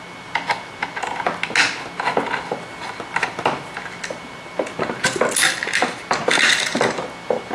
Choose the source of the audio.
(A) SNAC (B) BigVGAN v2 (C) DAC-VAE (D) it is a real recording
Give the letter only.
D